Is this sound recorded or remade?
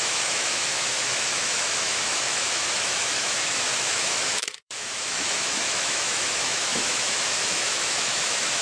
remade